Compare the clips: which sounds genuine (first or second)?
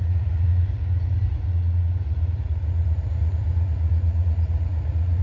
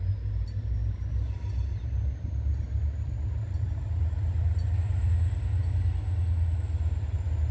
second